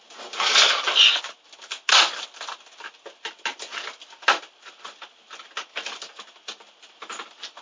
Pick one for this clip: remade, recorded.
recorded